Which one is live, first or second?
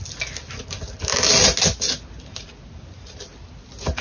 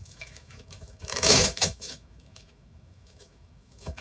first